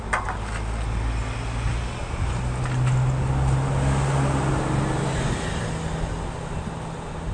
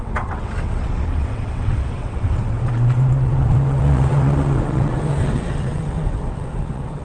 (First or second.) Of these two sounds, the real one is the first